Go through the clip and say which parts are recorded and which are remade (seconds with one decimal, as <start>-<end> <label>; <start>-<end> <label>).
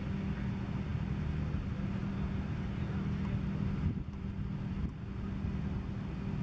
0.0-6.4 recorded